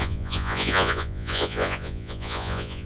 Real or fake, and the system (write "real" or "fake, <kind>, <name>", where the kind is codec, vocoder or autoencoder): fake, vocoder, Vocos